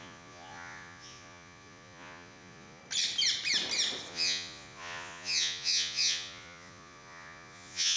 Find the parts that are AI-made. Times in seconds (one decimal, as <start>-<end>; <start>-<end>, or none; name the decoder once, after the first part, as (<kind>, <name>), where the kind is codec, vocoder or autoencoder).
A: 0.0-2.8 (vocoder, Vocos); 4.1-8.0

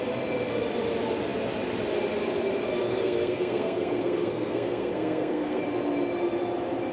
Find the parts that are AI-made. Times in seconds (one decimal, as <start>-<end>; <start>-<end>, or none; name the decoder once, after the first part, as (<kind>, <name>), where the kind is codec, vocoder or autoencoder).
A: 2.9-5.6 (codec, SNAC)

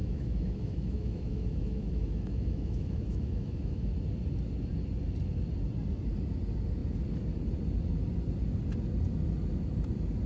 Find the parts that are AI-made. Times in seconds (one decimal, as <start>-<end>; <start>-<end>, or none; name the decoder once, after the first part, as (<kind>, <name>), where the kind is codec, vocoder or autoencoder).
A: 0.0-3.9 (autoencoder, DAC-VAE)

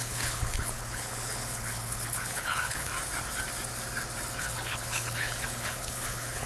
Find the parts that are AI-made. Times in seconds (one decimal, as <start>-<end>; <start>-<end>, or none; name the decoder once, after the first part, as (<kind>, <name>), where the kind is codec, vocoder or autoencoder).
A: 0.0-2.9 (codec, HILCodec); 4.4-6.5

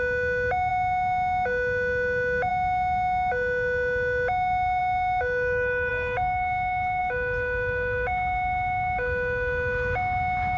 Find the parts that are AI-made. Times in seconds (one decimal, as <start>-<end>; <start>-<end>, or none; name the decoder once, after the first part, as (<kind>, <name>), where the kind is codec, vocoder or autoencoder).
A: none

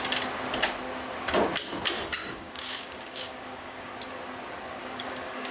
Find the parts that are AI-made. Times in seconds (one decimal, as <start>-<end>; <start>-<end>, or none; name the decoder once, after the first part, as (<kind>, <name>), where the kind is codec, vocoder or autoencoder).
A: 2.2-3.9 (codec, DAC); 4.8-5.5

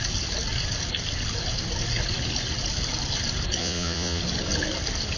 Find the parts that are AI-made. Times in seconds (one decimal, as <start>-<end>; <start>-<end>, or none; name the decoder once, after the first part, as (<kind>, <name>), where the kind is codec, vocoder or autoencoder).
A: 3.6-4.2 (vocoder, Vocos)

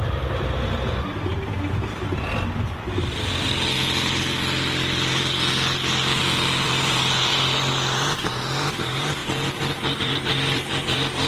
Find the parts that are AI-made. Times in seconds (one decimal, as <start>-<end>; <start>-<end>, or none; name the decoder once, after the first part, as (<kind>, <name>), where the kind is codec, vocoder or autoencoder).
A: 0.0-1.3 (vocoder, BigVGAN v2); 6.2-7.3; 8.7-9.2; 10.0-11.3